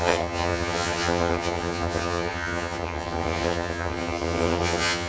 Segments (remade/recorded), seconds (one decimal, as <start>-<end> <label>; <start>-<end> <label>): 0.0-5.1 remade